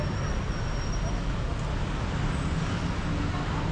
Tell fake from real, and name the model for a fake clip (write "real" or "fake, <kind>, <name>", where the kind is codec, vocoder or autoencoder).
real